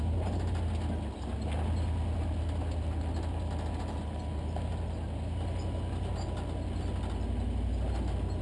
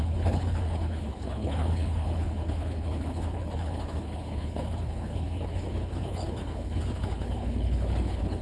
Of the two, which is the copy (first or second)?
second